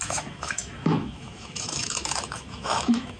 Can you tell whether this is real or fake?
fake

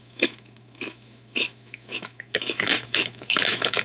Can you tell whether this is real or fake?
fake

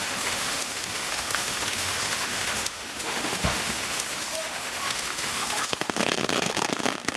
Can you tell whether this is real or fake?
fake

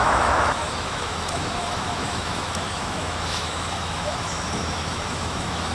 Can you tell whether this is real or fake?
fake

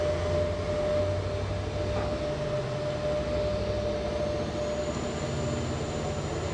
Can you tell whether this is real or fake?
real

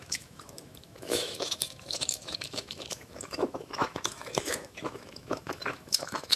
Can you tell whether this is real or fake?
fake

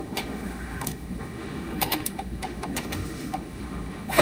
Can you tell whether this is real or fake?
fake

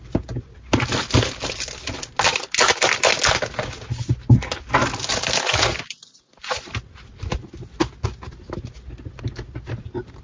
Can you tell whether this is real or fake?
real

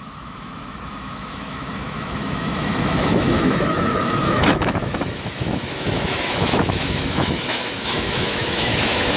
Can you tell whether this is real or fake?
fake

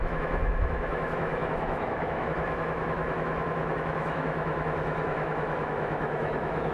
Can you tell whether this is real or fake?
fake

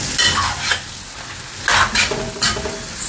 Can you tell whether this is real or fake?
real